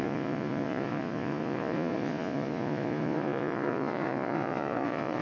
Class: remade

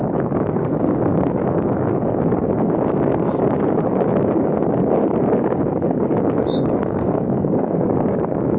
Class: remade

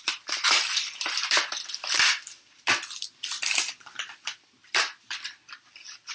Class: remade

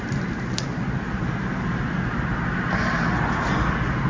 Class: recorded